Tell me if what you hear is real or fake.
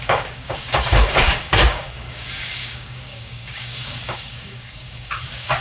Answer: fake